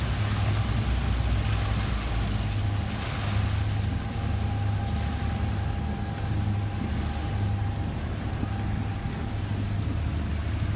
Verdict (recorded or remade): recorded